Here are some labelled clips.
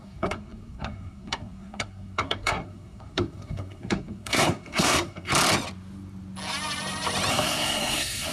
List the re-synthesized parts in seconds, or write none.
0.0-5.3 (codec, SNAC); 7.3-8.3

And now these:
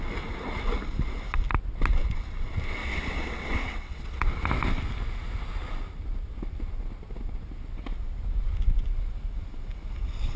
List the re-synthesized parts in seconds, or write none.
2.8-4.3 (vocoder, WaveNeXt)

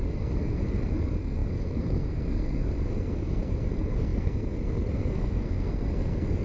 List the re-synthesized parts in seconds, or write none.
0.0-6.4 (codec, SNAC)